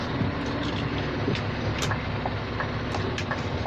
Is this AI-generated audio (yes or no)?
no